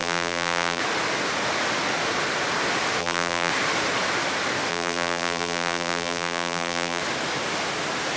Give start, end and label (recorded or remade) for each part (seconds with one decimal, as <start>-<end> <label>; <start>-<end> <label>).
0.0-0.8 remade; 0.8-3.0 recorded; 3.0-3.5 remade; 3.5-4.7 recorded; 4.7-7.0 remade; 7.0-8.2 recorded